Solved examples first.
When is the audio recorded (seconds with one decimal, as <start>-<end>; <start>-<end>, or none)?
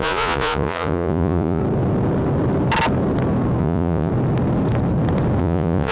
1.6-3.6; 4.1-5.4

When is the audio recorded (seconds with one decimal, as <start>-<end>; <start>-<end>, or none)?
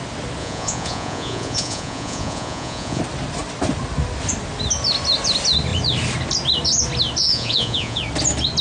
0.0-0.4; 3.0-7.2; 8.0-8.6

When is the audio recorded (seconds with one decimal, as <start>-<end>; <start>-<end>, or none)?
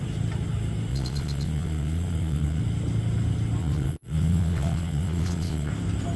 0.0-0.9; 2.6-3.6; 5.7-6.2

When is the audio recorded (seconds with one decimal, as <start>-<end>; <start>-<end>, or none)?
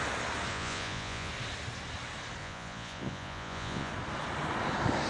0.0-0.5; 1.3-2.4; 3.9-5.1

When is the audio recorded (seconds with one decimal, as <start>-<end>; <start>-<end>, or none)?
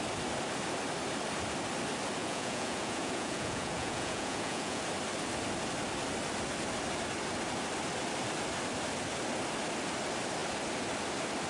0.0-2.2; 4.8-11.5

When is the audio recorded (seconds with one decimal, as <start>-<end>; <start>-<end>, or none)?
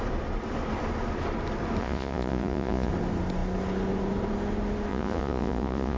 0.0-1.8; 2.9-4.9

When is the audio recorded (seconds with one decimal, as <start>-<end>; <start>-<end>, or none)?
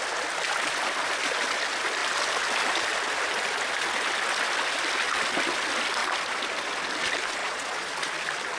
0.0-7.4; 7.9-8.6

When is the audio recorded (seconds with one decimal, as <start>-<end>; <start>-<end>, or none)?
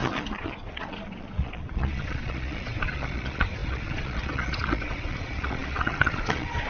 none